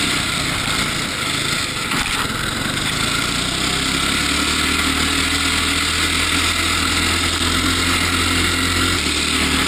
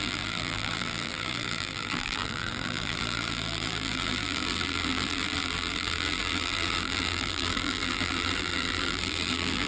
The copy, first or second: second